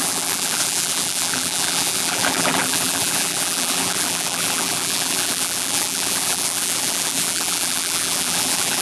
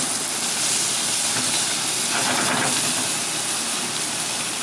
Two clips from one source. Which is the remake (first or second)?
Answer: first